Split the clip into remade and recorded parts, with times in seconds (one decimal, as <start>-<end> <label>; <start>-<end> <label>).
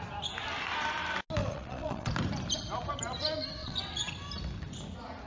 0.0-1.4 recorded; 1.4-2.1 remade; 2.1-3.6 recorded; 3.6-4.1 remade; 4.1-5.3 recorded